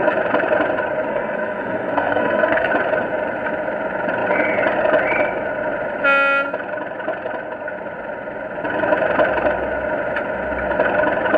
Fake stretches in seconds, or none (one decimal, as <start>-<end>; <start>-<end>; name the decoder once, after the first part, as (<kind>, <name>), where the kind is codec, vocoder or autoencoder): 1.1-2.7 (codec, SNAC)